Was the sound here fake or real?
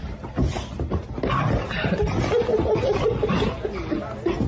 real